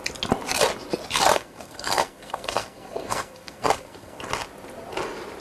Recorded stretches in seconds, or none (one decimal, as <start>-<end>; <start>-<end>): 0.0-1.3; 4.2-5.4